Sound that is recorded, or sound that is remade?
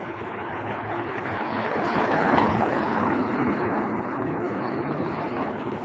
remade